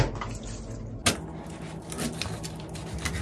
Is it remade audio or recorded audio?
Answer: recorded